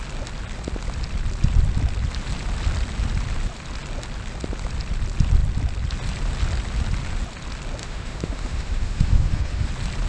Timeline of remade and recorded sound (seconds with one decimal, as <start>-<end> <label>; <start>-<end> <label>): 0.0-7.8 recorded; 7.8-9.7 remade; 9.7-10.1 recorded